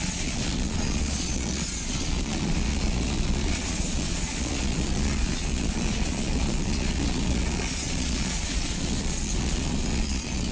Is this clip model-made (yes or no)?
yes